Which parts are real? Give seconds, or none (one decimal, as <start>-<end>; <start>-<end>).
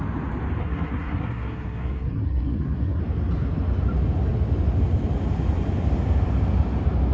0.0-0.6; 3.0-7.1